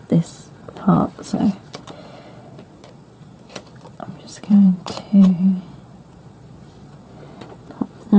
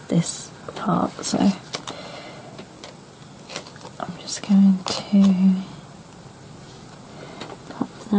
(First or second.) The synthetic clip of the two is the first